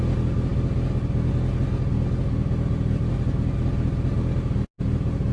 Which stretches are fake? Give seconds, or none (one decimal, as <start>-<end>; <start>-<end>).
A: none